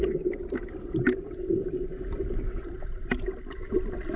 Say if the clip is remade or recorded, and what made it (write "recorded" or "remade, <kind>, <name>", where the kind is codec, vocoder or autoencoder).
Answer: recorded